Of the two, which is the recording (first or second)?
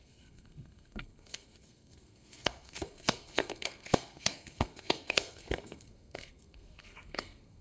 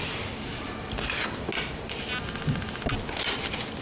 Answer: second